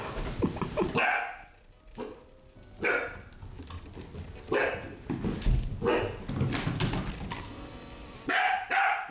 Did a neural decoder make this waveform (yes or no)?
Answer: no